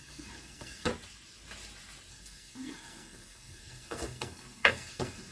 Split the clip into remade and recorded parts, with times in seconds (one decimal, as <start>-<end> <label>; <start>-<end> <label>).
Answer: 0.0-0.9 remade; 0.9-2.1 recorded; 2.1-5.3 remade